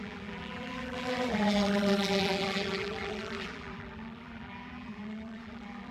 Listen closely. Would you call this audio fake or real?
fake